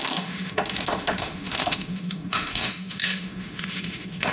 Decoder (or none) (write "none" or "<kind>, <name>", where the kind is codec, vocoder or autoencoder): autoencoder, DAC-VAE